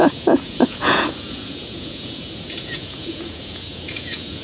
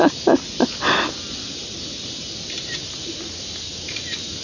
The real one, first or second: second